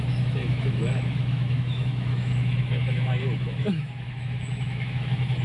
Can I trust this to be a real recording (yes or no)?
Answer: no